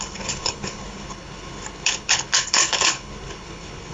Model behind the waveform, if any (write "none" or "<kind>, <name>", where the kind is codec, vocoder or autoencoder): codec, HILCodec